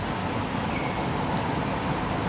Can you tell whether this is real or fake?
real